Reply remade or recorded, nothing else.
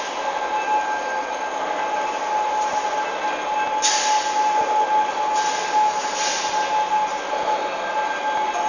recorded